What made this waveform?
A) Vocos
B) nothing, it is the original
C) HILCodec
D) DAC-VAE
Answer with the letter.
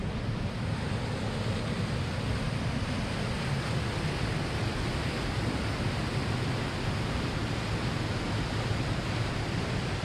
B